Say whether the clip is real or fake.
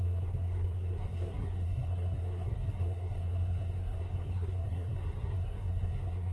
fake